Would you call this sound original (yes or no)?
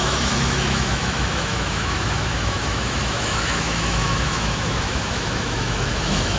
no